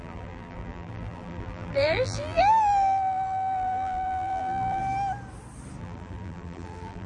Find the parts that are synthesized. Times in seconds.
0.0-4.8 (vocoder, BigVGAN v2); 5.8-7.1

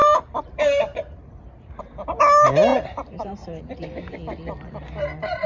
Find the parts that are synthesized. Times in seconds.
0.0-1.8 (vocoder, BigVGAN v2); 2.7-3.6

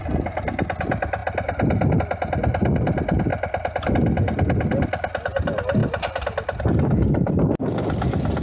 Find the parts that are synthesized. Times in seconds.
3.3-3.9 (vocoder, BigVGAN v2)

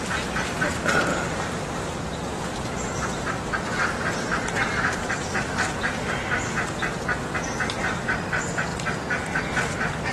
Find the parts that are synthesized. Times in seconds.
1.1-6.1 (vocoder, BigVGAN v2)

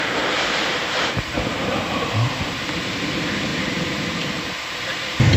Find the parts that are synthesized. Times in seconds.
0.0-5.4 (vocoder, BigVGAN v2)

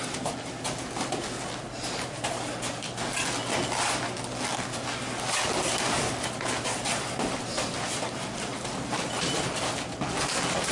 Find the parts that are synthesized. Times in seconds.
none